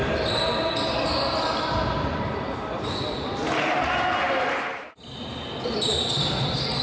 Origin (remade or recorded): recorded